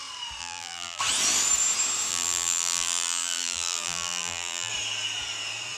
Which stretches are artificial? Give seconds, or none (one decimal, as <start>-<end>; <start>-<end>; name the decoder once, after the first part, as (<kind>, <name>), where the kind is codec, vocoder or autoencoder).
0.4-1.0 (vocoder, BigVGAN v2); 2.1-4.7